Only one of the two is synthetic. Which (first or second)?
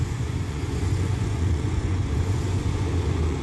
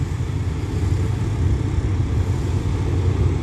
first